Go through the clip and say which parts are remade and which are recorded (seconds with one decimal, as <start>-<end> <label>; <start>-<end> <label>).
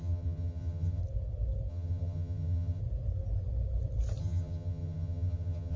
0.0-1.0 remade; 1.0-1.7 recorded; 1.7-2.8 remade; 2.8-4.2 recorded; 4.2-5.8 remade